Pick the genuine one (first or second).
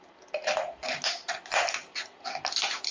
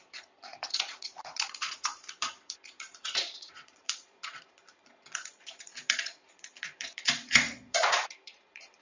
first